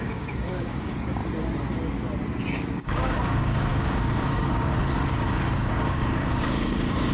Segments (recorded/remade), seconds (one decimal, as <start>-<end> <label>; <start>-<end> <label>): 0.0-1.2 remade; 1.2-2.7 recorded; 2.7-4.8 remade; 4.8-5.7 recorded; 5.7-7.1 remade